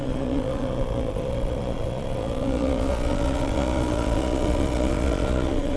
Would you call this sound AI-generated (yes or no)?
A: yes